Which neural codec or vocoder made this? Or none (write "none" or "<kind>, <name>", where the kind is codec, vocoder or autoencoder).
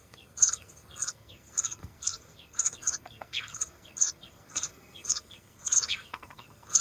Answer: codec, SNAC